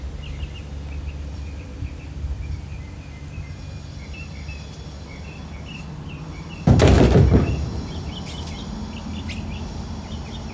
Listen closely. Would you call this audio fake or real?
real